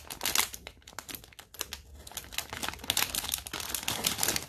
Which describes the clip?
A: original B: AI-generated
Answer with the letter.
A